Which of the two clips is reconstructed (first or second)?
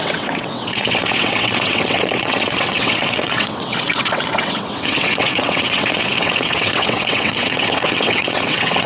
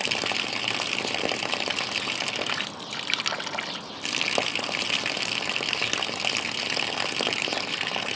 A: first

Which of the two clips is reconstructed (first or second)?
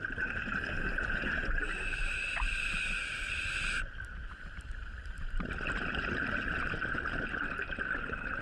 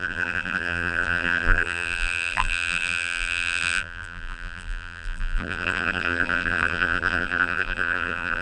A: second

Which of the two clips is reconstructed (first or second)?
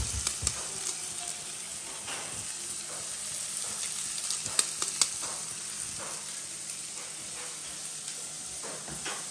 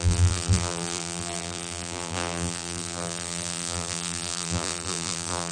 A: second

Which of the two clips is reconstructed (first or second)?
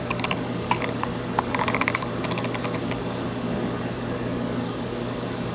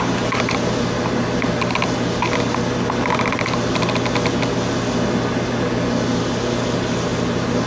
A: first